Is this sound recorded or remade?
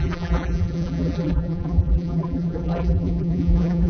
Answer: remade